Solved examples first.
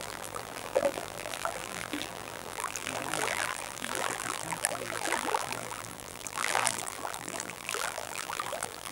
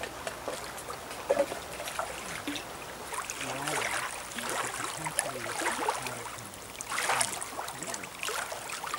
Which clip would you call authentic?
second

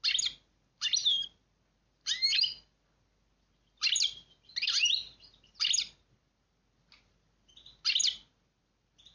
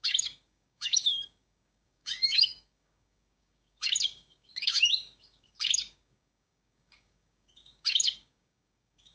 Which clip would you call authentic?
first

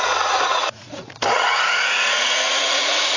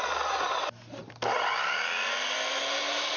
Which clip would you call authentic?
second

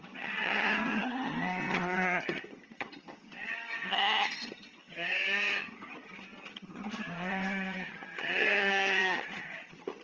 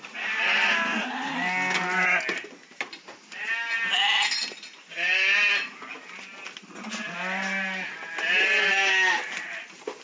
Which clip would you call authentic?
second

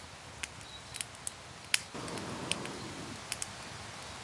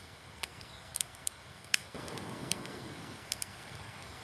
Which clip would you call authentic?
first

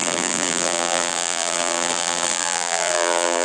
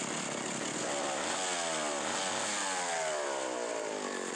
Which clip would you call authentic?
second